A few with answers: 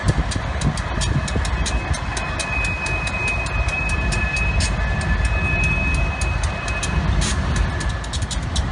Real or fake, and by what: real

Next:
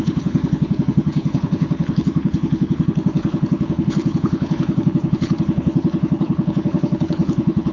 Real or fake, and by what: fake, codec, HILCodec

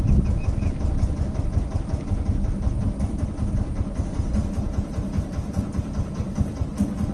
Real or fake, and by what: real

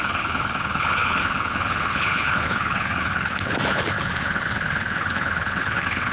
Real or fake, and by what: fake, codec, HILCodec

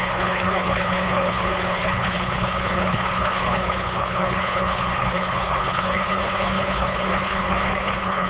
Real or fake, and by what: fake, codec, HILCodec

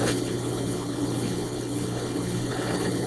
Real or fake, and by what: fake, codec, HILCodec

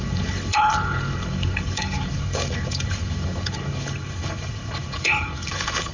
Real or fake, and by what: fake, codec, HILCodec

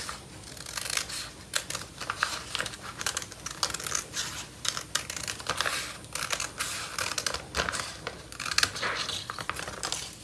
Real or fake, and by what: real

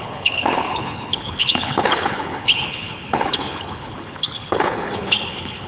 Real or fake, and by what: fake, codec, HILCodec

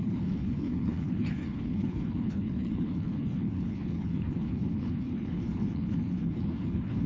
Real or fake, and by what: fake, codec, HILCodec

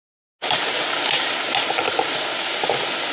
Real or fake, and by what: real